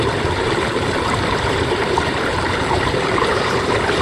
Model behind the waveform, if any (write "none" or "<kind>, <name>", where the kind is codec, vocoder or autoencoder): vocoder, BigVGAN v2